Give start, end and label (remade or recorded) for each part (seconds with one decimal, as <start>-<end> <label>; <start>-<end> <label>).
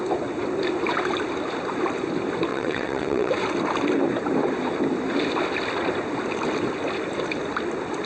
0.0-2.5 recorded; 2.5-3.3 remade; 3.3-8.1 recorded